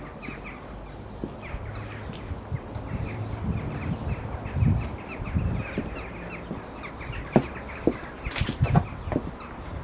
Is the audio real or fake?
real